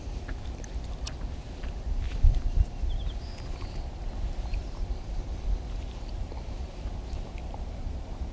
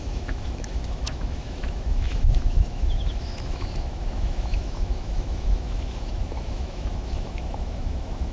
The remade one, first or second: second